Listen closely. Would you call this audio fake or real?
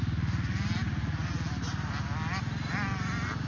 real